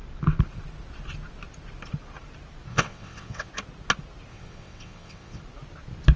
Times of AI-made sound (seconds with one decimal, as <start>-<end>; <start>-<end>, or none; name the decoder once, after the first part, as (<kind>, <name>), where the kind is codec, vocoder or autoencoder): 2.7-3.5 (vocoder, WaveNeXt); 4.3-5.4